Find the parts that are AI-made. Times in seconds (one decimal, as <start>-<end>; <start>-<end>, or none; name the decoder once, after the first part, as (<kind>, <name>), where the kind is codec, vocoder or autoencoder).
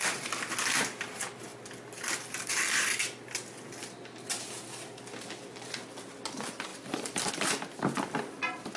1.5-3.3 (vocoder, BigVGAN v2); 6.7-7.3